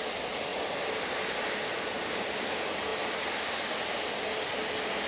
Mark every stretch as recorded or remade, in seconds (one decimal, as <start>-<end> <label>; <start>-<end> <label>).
0.0-5.1 recorded